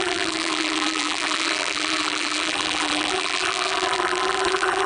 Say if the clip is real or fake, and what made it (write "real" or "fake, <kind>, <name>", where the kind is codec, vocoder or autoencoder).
fake, vocoder, BigVGAN v2